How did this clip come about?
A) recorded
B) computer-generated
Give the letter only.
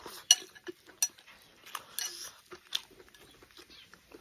A